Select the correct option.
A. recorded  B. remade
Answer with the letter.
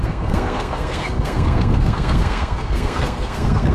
B